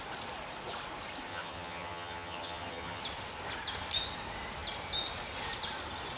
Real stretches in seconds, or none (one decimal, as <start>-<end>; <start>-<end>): 0.0-1.3; 3.0-6.2